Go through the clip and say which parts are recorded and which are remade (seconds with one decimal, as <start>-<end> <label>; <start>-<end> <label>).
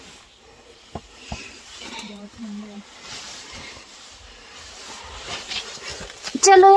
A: 0.0-5.9 remade; 5.9-6.8 recorded